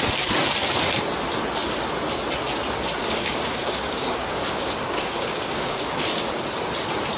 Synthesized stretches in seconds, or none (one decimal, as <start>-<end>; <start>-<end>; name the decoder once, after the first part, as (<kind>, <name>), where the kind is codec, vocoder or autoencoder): 3.0-6.1 (codec, DAC)